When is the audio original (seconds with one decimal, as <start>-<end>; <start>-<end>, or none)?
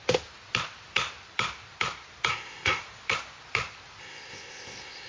0.0-2.3; 2.8-4.0